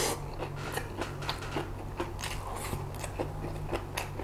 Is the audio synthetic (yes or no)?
no